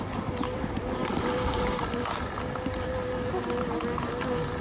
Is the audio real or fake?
real